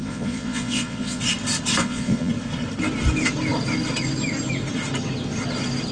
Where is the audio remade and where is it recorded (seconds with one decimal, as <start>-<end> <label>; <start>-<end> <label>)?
0.0-1.2 remade; 1.2-1.8 recorded; 1.8-2.3 remade; 2.3-5.9 recorded